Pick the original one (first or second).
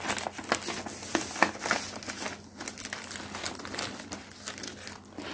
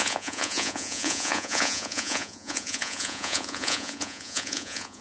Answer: first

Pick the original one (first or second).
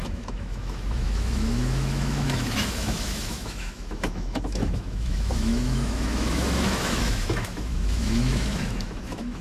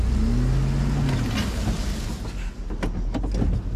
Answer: second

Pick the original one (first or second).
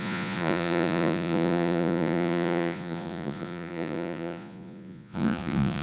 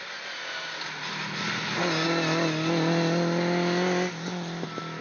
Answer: second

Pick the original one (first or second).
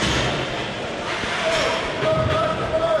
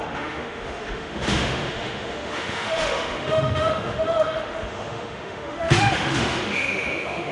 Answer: first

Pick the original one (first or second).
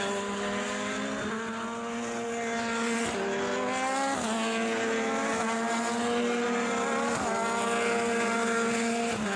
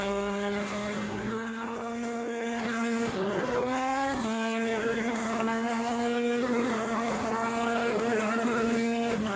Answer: first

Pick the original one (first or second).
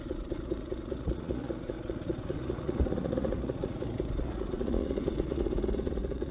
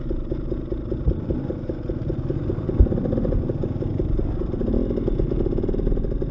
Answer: second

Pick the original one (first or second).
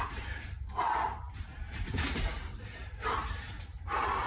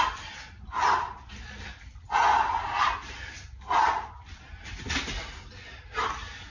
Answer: second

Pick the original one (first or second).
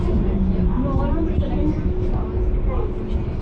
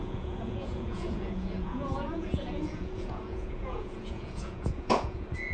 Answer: first